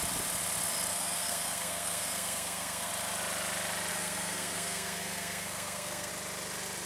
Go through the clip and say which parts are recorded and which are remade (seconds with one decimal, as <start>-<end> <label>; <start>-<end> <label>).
0.0-0.9 recorded; 0.9-2.9 remade; 2.9-3.9 recorded; 3.9-6.1 remade; 6.1-6.9 recorded